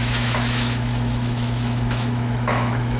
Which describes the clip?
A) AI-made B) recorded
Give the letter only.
A